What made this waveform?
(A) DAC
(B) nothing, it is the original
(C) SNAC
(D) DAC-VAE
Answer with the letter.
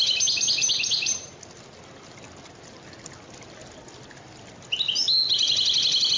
B